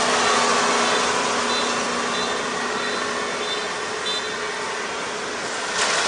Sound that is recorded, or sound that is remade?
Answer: recorded